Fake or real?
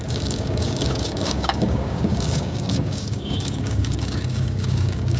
fake